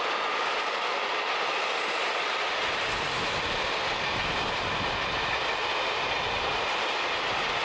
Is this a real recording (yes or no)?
yes